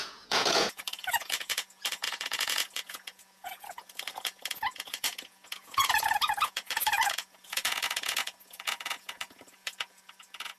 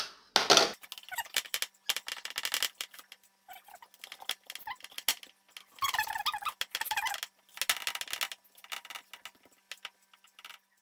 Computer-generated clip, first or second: first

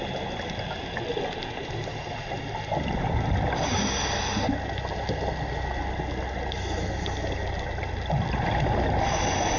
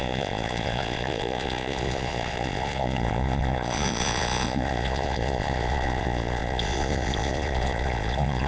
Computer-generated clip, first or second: second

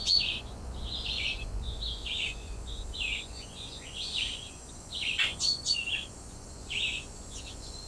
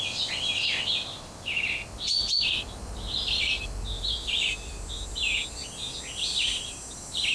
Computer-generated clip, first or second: first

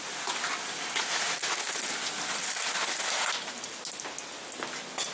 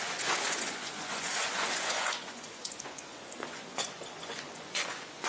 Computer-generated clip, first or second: second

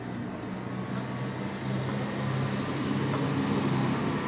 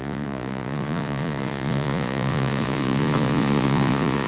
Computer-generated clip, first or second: second